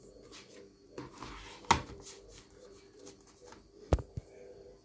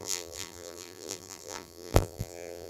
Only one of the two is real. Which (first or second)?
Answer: first